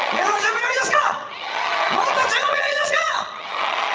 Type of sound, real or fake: fake